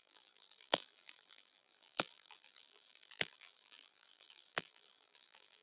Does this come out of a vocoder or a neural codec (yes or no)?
yes